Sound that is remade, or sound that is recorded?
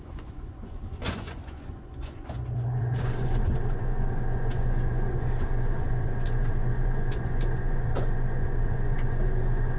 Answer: remade